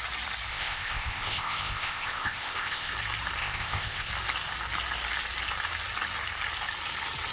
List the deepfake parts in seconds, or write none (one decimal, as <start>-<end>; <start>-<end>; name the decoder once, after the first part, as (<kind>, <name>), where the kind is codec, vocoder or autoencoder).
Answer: 0.5-2.9 (codec, ZipCodec); 3.4-4.1